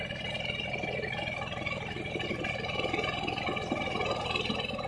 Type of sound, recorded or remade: recorded